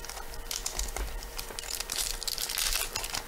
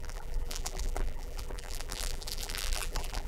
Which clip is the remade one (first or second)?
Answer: second